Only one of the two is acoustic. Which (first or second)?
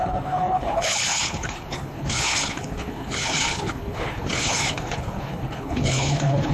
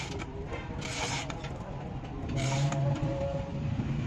second